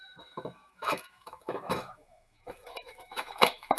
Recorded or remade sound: remade